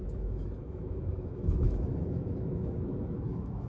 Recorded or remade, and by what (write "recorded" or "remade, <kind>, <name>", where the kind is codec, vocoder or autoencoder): remade, autoencoder, DAC-VAE